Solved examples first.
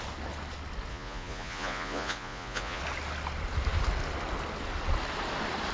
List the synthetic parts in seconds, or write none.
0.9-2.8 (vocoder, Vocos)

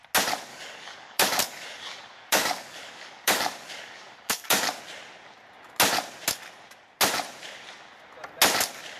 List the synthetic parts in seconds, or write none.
0.5-4.8 (codec, DAC)

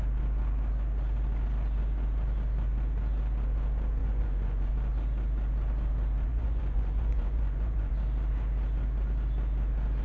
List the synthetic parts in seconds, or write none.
4.0-4.7 (vocoder, Vocos); 6.3-7.9

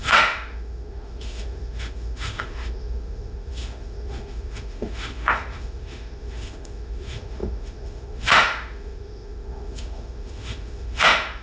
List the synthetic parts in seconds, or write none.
0.0-11.4 (autoencoder, DAC-VAE)

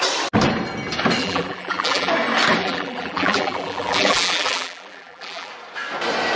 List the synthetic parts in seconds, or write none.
1.2-2.1 (vocoder, BigVGAN v2); 2.6-5.5

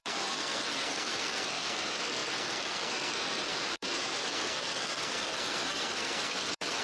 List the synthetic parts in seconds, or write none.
0.0-6.8 (codec, SNAC)

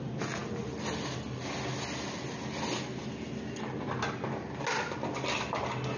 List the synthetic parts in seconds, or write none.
none